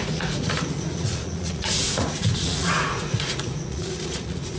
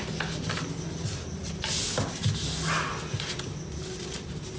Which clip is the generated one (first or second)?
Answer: first